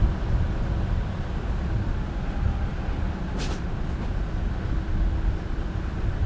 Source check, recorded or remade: recorded